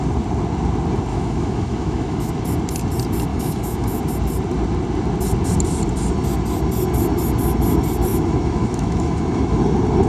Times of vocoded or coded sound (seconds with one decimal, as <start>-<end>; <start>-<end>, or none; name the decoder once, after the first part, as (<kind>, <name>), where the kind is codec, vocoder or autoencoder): 1.1-2.3 (autoencoder, DAC-VAE); 3.3-4.0; 8.1-9.6